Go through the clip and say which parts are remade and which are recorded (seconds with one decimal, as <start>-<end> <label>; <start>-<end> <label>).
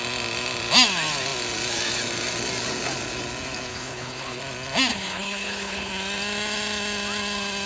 0.0-3.7 recorded; 3.7-4.4 remade; 4.4-4.9 recorded; 4.9-5.9 remade; 5.9-7.7 recorded